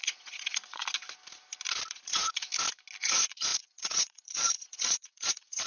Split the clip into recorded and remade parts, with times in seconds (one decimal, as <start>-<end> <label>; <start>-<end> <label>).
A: 0.0-0.8 remade; 0.8-1.9 recorded; 1.9-2.4 remade; 2.4-3.0 recorded; 3.0-5.7 remade

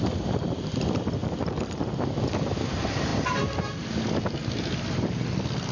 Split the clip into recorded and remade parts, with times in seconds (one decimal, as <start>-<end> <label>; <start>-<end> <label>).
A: 0.0-5.7 recorded